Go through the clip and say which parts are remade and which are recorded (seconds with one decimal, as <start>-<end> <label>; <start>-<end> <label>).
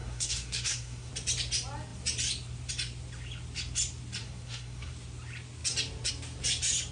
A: 0.0-1.1 remade; 1.1-4.2 recorded; 4.2-4.9 remade; 4.9-6.9 recorded